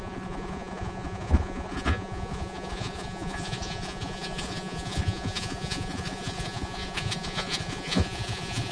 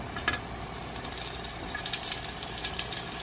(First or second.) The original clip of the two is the second